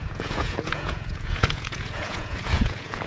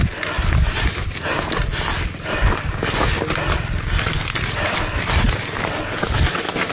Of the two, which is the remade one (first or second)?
first